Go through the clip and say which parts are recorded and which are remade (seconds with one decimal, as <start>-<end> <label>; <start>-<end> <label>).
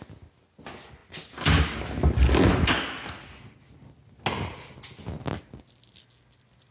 0.0-6.7 recorded